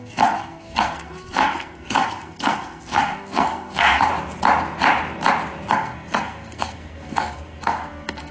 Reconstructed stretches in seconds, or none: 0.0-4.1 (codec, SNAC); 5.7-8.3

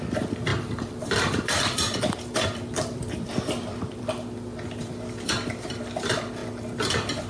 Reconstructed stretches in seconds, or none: 0.0-6.4 (vocoder, BigVGAN v2)

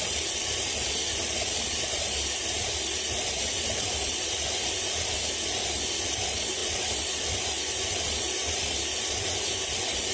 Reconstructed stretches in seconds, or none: none

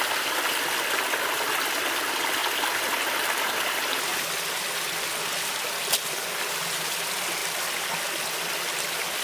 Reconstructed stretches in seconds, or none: none

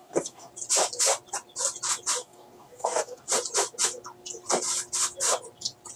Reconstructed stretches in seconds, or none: 0.0-0.5 (codec, DAC); 2.2-3.3

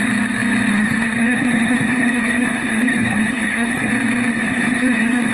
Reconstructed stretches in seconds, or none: 0.7-3.9 (codec, SNAC); 4.3-5.3